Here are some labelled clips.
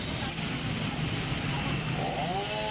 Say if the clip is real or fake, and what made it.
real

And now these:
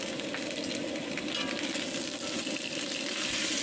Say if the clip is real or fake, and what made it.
real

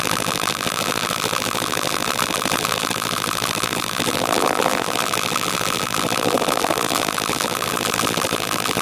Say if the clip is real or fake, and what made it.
fake, vocoder, BigVGAN v2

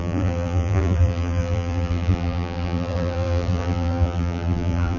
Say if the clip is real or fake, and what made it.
fake, vocoder, BigVGAN v2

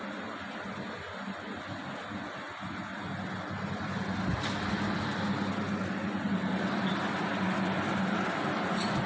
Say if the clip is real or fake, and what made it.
real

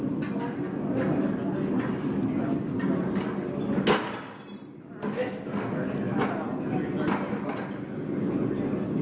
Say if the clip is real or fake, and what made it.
real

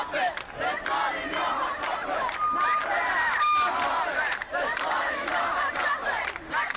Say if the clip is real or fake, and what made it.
fake, vocoder, BigVGAN v2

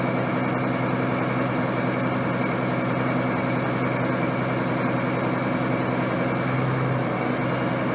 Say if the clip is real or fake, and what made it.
real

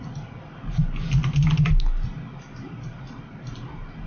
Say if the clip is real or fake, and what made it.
real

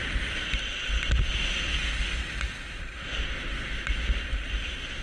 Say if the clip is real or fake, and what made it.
real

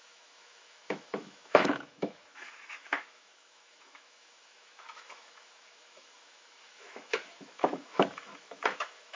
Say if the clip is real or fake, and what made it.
fake, autoencoder, DAC-VAE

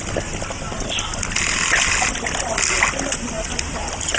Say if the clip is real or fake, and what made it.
real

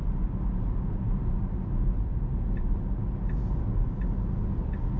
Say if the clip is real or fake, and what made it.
real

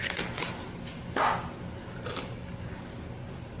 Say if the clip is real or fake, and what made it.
real